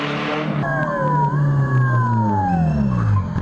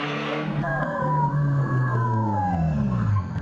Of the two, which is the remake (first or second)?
second